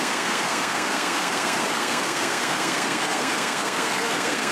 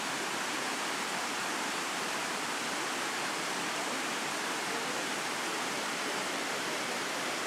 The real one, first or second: second